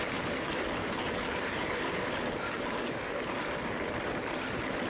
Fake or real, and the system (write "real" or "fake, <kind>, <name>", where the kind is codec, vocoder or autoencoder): real